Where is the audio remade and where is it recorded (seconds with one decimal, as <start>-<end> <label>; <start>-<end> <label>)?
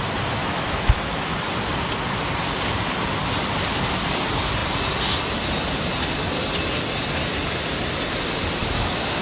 0.0-0.4 recorded; 0.4-1.4 remade; 1.4-8.6 recorded; 8.6-9.2 remade